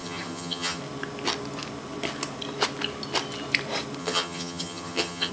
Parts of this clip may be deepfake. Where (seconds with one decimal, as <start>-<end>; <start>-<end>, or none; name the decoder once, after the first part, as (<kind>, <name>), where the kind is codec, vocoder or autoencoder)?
0.0-0.8 (vocoder, HiFi-GAN); 4.0-5.3